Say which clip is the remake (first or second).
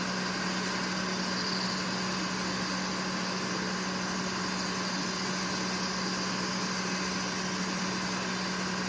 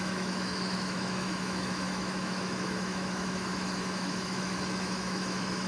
second